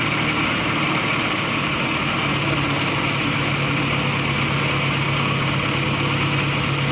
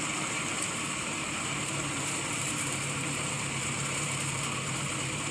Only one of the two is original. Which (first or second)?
first